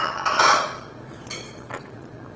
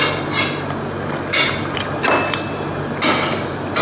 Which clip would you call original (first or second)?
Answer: second